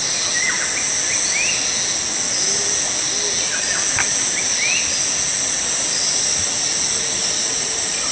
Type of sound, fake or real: real